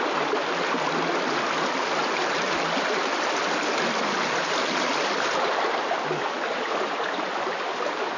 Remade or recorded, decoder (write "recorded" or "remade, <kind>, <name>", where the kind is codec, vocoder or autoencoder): recorded